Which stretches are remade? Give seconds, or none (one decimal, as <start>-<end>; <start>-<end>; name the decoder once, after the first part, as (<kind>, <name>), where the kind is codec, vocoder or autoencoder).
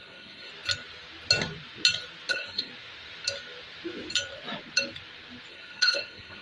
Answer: 0.0-0.5 (codec, SNAC); 2.3-2.7; 5.5-6.4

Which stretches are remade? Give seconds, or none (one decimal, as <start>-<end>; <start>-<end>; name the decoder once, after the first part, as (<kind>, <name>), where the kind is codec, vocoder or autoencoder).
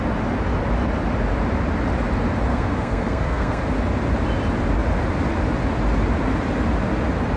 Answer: 2.5-3.6 (codec, SNAC)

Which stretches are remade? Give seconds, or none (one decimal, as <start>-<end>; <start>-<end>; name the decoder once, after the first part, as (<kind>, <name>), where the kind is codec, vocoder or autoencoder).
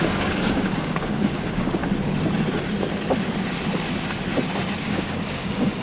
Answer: 0.0-1.8 (codec, DAC); 4.8-5.8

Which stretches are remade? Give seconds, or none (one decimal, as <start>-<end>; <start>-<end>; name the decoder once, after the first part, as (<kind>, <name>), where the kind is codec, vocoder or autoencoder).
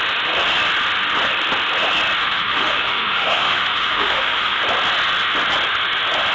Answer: 2.2-4.6 (autoencoder, DAC-VAE)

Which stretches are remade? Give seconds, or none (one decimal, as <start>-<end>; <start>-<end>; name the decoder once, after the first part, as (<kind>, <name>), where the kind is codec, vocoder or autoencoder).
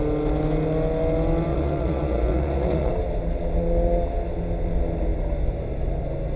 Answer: 1.5-2.9 (vocoder, Vocos)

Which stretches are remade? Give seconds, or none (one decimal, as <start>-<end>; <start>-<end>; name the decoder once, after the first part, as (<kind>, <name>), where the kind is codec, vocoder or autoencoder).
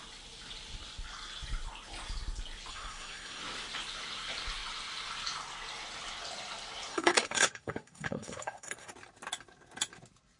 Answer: 2.7-3.4 (codec, SNAC); 6.9-8.9